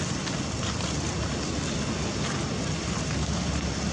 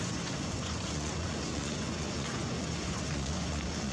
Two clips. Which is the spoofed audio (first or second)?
second